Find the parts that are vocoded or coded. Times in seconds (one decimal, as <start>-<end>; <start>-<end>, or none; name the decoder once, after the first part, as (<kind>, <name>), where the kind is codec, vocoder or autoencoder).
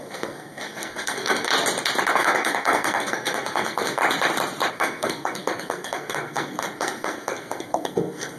0.0-1.5 (codec, SNAC); 2.1-4.0; 4.7-8.4